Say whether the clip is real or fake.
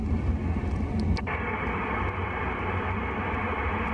real